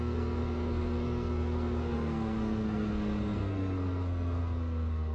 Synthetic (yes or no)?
yes